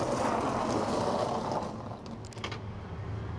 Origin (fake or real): real